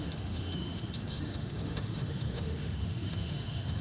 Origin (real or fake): fake